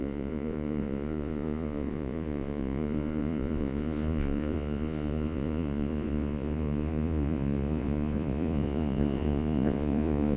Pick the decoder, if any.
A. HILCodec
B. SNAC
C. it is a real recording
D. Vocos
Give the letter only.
D